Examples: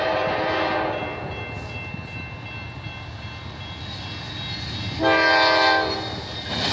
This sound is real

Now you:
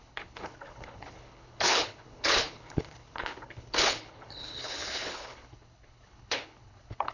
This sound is fake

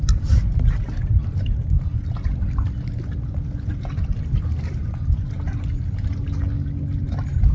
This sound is real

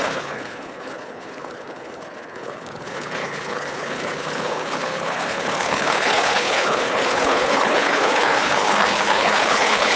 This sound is fake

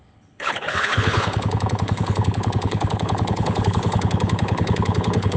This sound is fake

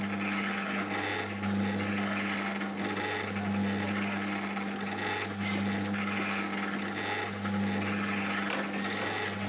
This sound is real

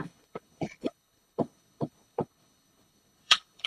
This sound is fake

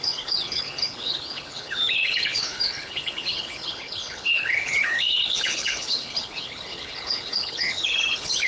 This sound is fake